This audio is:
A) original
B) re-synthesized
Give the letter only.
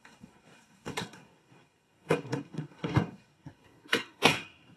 B